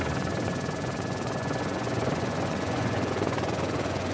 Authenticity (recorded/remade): remade